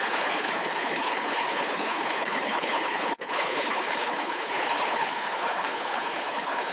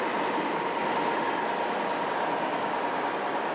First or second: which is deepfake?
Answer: first